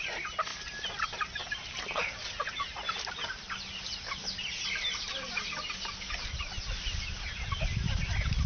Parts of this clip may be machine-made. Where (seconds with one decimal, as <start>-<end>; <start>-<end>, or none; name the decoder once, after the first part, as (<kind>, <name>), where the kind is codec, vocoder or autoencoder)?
none